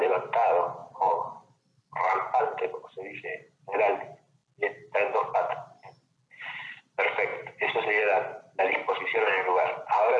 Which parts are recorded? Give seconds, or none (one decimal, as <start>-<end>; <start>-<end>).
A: 0.0-10.2